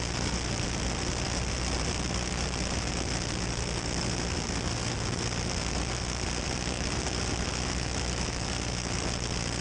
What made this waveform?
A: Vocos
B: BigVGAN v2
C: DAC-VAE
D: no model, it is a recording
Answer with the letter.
D